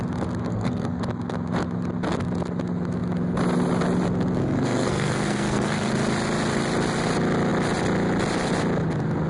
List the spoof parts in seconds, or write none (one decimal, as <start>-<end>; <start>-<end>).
0.5-1.0; 4.4-5.9